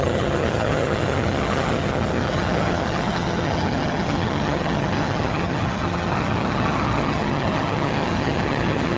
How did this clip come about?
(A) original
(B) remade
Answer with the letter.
B